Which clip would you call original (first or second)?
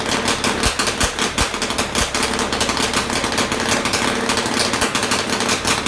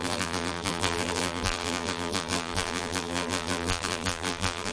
first